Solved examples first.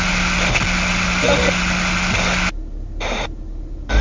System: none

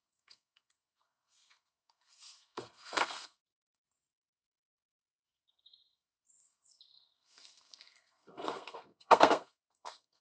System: codec, SNAC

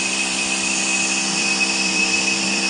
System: vocoder, BigVGAN v2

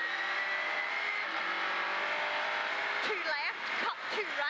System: none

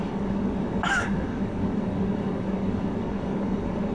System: codec, DAC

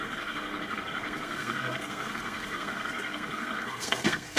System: codec, SNAC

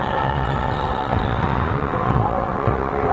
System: vocoder, WaveNeXt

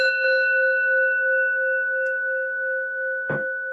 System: autoencoder, DAC-VAE